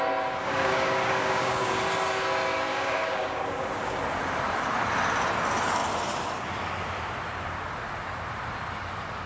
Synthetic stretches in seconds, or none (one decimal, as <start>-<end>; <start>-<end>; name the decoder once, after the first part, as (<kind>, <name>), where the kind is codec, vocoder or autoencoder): 0.4-1.8 (codec, DAC); 2.7-4.0